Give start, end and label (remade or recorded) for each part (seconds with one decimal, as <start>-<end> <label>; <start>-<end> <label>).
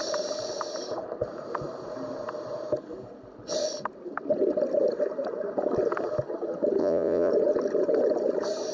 0.0-6.8 recorded; 6.8-7.3 remade; 7.3-8.7 recorded